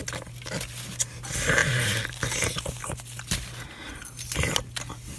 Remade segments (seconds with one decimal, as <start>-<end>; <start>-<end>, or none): none